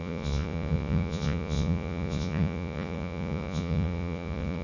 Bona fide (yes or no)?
no